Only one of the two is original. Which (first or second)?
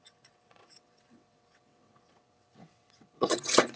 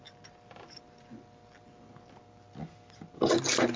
second